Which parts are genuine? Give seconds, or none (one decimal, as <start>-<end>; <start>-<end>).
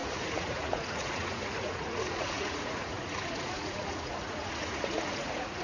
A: none